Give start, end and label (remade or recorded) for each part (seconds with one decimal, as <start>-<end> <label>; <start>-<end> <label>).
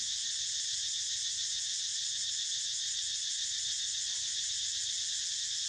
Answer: 0.0-1.9 recorded; 1.9-4.5 remade; 4.5-5.7 recorded